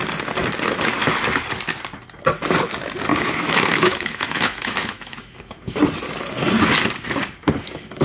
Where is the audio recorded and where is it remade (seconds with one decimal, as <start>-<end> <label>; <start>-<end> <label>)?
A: 0.0-3.1 recorded; 3.1-5.8 remade; 5.8-8.0 recorded